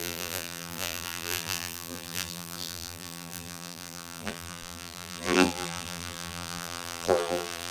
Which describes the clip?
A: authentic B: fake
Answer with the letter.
B